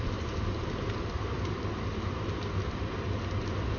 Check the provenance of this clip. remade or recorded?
recorded